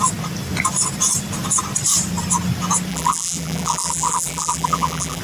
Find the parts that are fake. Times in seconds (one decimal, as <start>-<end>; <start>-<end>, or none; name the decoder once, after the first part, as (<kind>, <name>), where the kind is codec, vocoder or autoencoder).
2.9-5.2 (vocoder, BigVGAN v2)